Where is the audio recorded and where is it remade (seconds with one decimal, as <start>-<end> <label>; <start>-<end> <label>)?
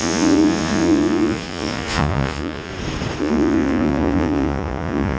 0.0-2.7 remade; 2.7-3.2 recorded; 3.2-5.2 remade